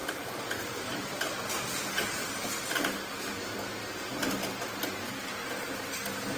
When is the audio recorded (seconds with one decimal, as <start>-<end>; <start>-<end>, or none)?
1.5-5.4; 5.9-6.4